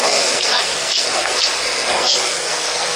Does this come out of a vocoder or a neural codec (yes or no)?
yes